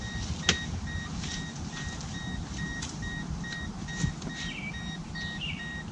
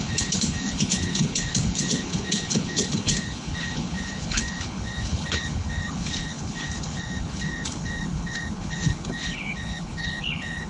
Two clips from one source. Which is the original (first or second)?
first